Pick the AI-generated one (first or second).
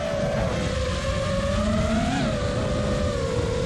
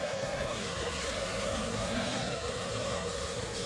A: second